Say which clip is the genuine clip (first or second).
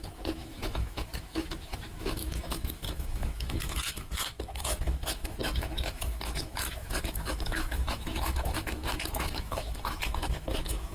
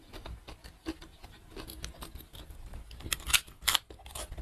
second